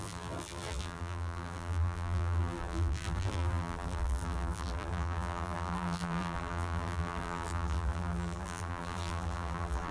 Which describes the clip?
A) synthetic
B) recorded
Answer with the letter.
A